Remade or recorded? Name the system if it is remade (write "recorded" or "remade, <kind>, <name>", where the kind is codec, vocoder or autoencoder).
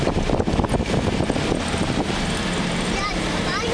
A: recorded